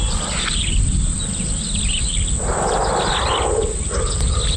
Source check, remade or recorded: recorded